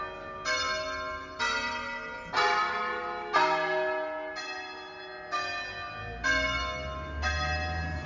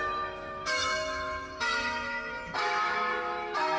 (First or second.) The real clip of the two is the first